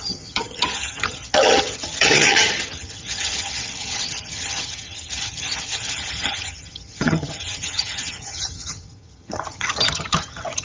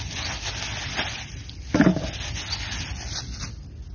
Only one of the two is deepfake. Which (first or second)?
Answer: first